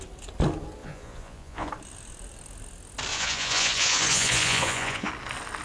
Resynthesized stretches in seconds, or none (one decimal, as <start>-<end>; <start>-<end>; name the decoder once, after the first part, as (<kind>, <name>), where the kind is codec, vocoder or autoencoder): 0.8-1.7 (vocoder, Vocos); 3.1-5.1